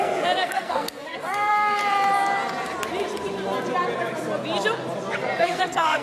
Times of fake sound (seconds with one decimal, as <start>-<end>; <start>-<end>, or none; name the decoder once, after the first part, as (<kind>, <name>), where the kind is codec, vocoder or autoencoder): 0.0-1.8 (codec, SNAC); 5.4-6.0